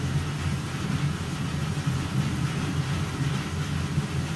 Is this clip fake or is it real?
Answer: real